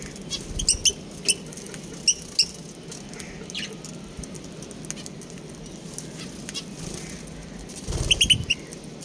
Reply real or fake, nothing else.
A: real